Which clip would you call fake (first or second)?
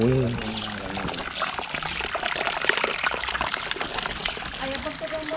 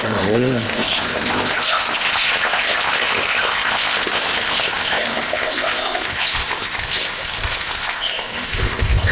second